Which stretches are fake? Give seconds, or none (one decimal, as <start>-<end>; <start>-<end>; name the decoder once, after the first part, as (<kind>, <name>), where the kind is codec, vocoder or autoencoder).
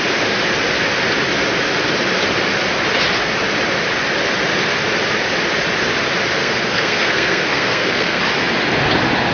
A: 6.4-8.2 (codec, SNAC)